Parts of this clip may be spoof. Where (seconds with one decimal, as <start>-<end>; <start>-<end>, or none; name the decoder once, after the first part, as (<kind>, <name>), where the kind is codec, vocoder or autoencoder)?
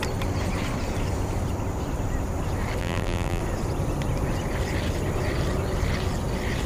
2.8-3.4 (vocoder, BigVGAN v2)